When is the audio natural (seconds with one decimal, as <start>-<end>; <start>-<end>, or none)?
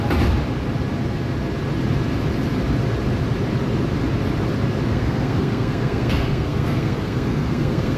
0.0-4.9